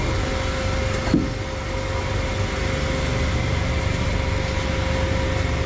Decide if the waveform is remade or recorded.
recorded